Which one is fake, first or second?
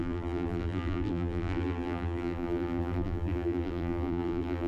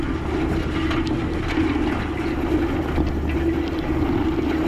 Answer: first